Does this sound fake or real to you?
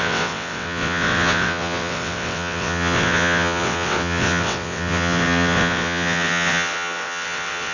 fake